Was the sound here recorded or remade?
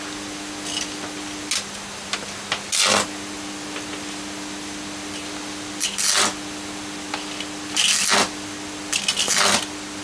recorded